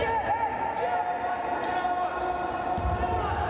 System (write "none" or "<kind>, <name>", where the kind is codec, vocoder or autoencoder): none